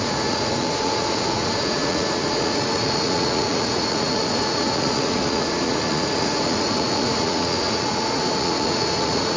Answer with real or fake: fake